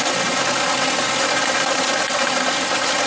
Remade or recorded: recorded